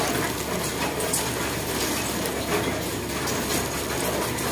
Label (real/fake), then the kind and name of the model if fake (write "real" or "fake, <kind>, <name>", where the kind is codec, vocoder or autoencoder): real